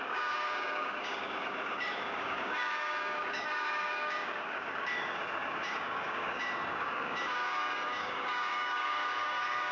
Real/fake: fake